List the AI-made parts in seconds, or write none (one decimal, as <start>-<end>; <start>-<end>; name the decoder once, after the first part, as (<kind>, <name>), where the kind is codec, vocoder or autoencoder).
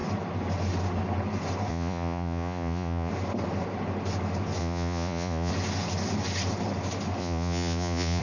1.7-3.1 (vocoder, Vocos); 4.6-5.5; 7.2-8.2